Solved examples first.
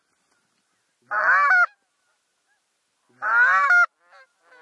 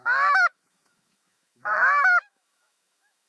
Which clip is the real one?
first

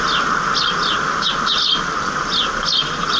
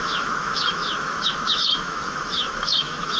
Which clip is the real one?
first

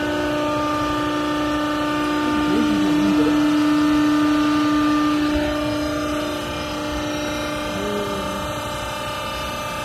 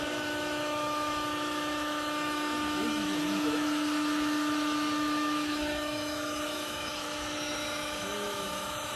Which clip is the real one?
first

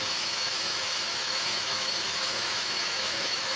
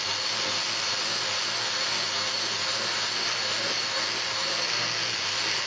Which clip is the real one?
second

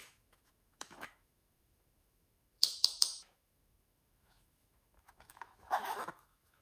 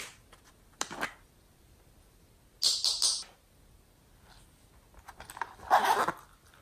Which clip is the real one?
second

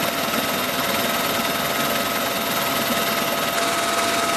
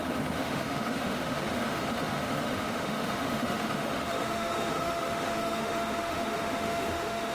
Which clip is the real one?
first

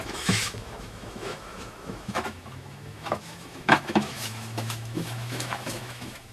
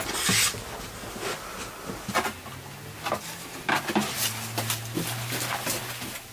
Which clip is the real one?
second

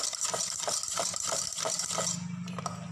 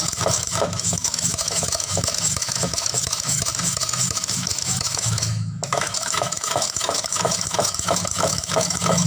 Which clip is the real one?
first